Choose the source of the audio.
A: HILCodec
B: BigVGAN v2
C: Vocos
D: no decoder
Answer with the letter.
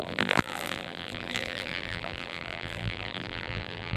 B